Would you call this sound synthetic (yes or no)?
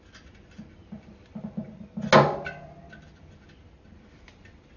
no